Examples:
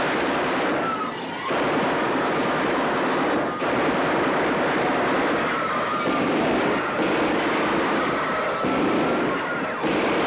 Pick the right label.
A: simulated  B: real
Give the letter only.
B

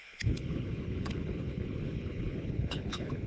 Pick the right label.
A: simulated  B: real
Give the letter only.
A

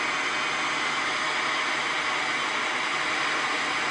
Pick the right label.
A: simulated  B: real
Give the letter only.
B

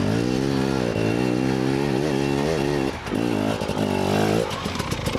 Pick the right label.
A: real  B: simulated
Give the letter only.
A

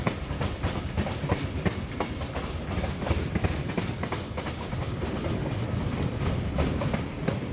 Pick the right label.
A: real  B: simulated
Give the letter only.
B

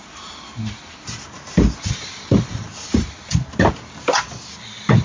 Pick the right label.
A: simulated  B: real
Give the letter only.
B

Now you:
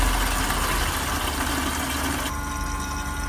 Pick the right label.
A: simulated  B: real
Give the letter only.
B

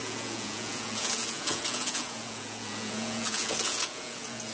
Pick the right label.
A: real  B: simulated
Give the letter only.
B